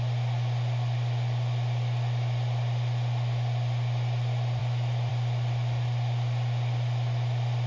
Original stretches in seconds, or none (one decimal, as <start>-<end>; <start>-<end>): 0.0-7.7